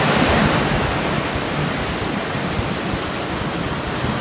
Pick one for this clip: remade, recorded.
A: recorded